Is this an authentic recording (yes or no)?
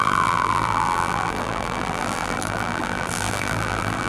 no